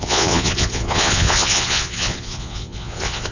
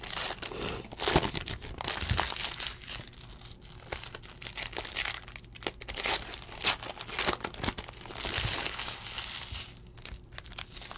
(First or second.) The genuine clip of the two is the second